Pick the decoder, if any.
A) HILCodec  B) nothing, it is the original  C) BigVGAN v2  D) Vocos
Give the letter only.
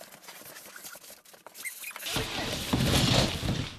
B